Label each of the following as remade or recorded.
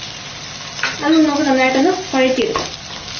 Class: recorded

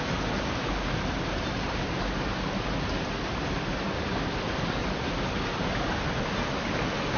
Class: recorded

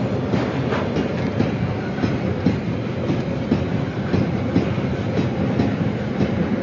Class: recorded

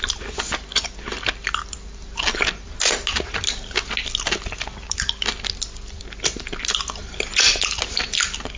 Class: recorded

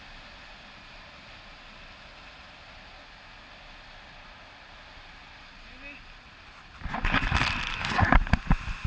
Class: recorded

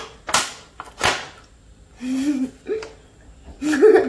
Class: recorded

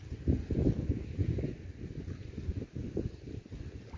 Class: recorded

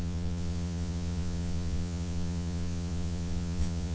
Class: remade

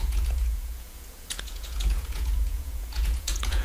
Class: remade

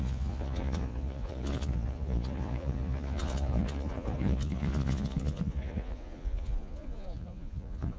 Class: remade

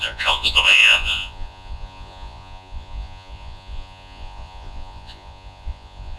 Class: remade